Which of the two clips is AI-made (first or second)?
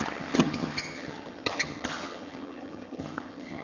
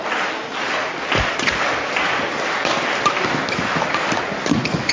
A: first